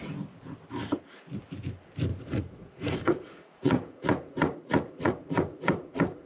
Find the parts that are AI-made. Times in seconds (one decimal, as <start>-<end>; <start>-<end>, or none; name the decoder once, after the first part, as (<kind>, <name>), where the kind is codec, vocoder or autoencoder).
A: 2.1-6.3 (vocoder, Vocos)